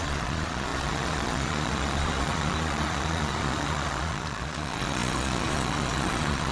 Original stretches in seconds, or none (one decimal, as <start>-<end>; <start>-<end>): none